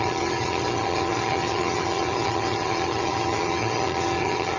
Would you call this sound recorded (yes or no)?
no